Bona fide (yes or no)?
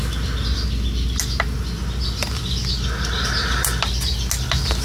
yes